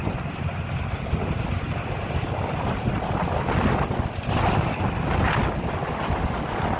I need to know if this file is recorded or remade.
recorded